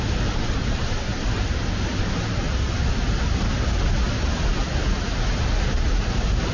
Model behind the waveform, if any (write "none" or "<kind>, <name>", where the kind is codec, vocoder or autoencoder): none